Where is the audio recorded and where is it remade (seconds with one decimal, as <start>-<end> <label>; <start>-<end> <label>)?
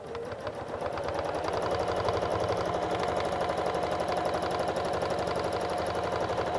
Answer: 0.0-6.6 recorded